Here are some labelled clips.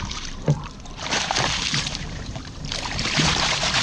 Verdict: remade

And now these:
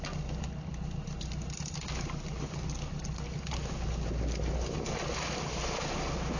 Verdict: recorded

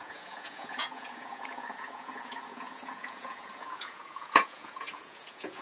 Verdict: remade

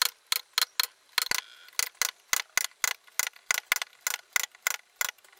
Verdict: recorded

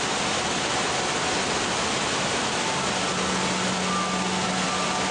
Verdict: recorded